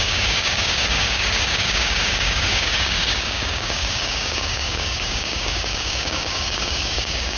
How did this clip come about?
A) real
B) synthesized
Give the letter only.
B